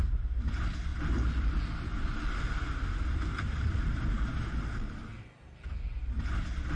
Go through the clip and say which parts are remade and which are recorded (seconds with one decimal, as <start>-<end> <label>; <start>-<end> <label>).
0.0-6.8 recorded